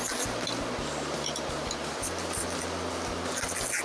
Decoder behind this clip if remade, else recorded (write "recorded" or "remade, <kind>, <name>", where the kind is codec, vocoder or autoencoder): recorded